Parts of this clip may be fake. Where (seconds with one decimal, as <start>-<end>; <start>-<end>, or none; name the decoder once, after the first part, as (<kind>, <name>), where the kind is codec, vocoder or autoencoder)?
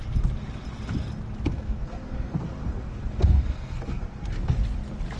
1.5-4.6 (codec, SNAC)